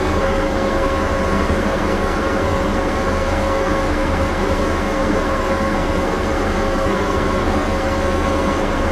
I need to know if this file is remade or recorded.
remade